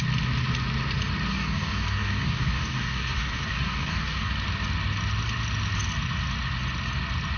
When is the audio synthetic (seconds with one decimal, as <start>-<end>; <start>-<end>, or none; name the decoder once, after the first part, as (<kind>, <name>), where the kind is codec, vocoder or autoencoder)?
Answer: 1.3-4.3 (codec, DAC)